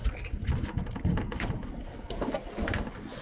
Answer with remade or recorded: recorded